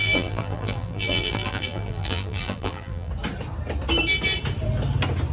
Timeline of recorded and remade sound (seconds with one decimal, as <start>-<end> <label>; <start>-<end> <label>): 0.0-3.1 remade; 3.1-5.3 recorded